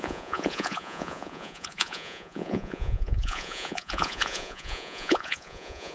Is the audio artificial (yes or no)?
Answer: yes